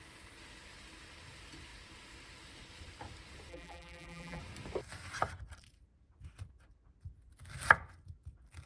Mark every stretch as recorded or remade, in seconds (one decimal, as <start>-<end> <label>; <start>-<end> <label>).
0.0-3.5 recorded; 3.5-4.4 remade; 4.4-8.7 recorded